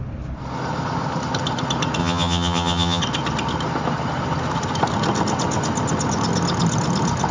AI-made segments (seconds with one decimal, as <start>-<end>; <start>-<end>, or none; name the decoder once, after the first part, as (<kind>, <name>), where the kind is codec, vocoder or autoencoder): 2.0-3.0 (vocoder, HiFi-GAN)